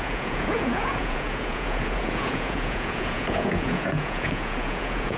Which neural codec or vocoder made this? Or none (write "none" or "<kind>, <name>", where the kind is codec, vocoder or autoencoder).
vocoder, Vocos